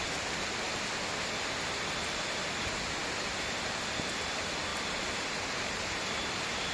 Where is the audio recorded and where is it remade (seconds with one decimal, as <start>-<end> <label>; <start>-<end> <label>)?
0.0-4.7 recorded; 4.7-6.7 remade